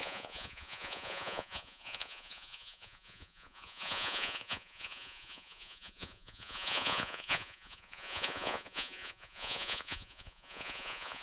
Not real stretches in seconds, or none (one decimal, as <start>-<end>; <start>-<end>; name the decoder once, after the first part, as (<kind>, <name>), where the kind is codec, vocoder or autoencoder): 0.0-11.2 (vocoder, Vocos)